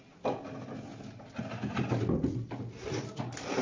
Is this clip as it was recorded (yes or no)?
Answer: yes